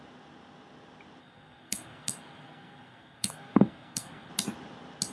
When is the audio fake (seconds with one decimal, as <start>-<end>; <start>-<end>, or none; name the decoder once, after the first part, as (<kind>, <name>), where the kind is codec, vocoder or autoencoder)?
1.2-4.3 (codec, SNAC)